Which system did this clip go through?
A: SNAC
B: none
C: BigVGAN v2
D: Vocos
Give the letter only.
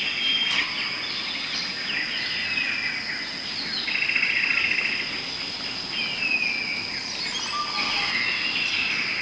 B